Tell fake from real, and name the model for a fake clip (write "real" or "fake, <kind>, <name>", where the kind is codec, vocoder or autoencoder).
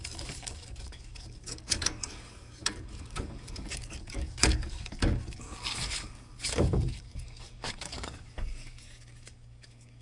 fake, codec, DAC